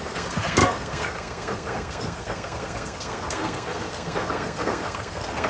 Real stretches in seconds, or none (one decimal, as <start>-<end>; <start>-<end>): none